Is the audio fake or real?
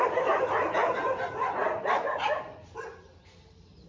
real